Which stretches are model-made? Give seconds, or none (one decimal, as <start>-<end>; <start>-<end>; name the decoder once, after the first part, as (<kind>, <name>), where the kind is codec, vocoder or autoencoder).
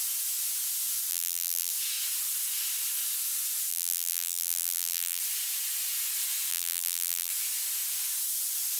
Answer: 1.1-1.7 (vocoder, BigVGAN v2); 3.7-5.2; 6.5-7.3